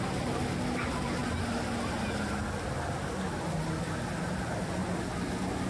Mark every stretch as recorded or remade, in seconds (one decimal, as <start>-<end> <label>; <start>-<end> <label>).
0.0-5.7 recorded